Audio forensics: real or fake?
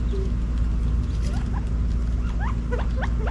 real